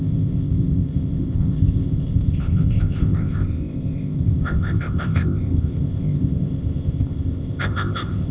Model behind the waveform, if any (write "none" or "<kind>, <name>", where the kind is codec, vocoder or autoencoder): codec, ZipCodec